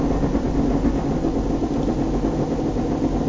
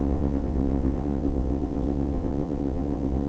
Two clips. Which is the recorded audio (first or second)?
first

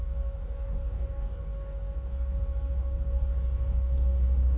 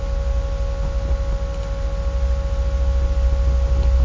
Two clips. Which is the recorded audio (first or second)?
second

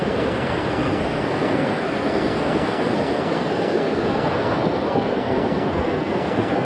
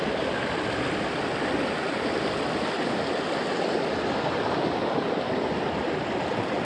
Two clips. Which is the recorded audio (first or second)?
second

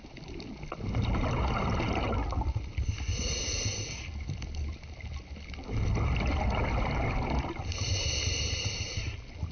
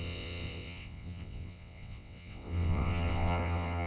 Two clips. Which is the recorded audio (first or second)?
first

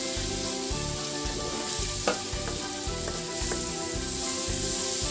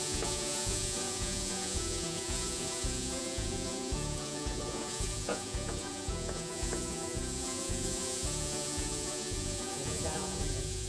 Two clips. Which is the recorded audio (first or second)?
first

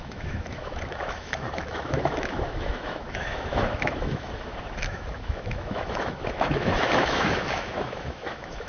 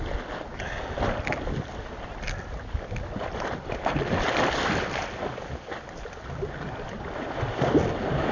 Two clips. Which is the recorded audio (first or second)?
second